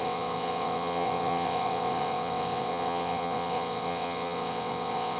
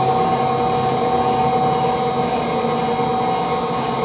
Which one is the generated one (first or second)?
first